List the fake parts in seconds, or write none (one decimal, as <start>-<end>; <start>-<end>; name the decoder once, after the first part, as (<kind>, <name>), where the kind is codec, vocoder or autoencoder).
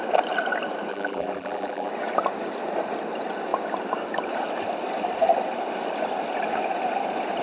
0.9-1.9 (vocoder, BigVGAN v2)